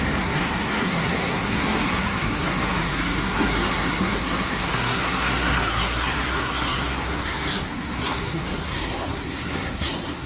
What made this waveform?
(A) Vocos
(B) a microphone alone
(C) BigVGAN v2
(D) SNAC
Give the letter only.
D